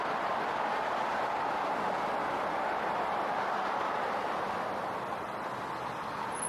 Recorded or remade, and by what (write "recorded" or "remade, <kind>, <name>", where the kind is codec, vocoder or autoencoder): recorded